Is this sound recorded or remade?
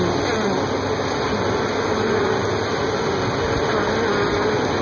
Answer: recorded